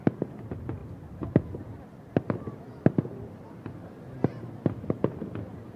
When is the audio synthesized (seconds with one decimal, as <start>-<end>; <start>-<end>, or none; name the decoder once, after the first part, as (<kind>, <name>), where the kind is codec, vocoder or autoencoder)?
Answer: none